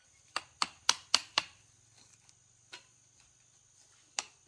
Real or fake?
real